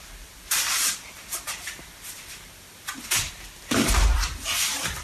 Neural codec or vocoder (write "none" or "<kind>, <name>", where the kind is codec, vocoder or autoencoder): vocoder, BigVGAN v2